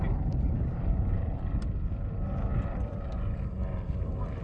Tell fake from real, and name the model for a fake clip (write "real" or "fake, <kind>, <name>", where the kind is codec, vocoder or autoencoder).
fake, vocoder, BigVGAN v2